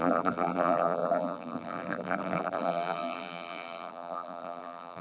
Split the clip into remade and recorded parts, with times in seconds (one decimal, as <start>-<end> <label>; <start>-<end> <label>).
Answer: 0.0-5.0 remade